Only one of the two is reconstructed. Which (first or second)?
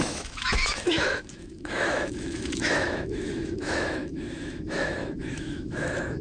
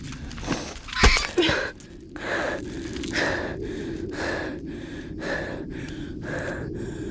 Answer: first